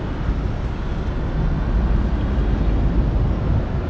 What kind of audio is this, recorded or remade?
recorded